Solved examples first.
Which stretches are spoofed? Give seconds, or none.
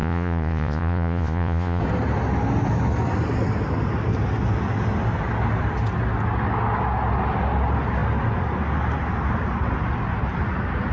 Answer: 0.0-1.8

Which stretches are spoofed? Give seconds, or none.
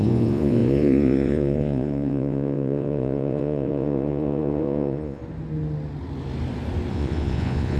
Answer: 0.0-5.2; 6.9-7.8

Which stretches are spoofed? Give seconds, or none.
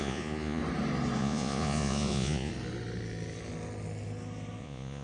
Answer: 0.0-0.6; 1.2-2.5; 4.6-5.0